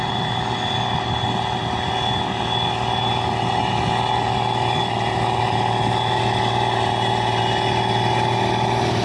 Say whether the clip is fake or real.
real